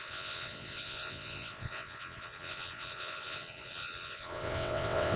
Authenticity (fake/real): fake